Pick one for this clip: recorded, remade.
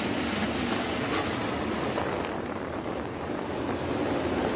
recorded